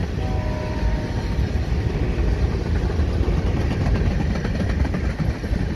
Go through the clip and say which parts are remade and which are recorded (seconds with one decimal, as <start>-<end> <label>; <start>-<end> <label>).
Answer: 0.0-3.3 recorded; 3.3-5.8 remade